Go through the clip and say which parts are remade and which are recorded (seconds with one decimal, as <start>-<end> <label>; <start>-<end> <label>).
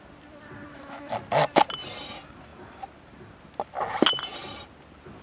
0.0-0.7 recorded; 0.7-1.2 remade; 1.2-5.2 recorded